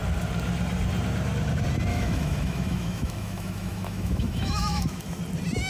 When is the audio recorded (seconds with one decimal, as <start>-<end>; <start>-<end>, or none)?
0.0-1.9; 5.2-5.7